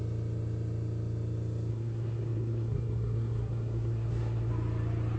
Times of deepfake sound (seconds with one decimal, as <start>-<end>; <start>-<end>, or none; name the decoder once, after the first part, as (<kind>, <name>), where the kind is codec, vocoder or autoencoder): 1.7-4.5 (codec, SNAC)